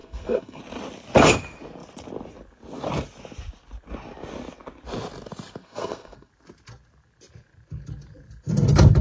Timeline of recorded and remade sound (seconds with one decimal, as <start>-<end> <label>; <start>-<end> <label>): 0.0-0.6 remade; 0.6-5.6 recorded; 5.6-6.3 remade; 6.3-9.0 recorded